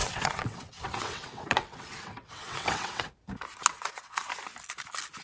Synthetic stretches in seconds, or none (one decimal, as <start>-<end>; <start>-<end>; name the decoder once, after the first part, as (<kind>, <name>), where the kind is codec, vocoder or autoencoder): 0.0-3.1 (vocoder, WaveNeXt); 3.7-4.3